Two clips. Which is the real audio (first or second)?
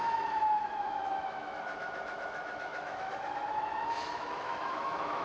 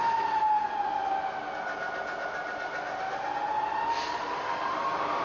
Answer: second